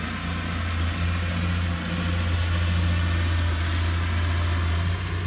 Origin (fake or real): real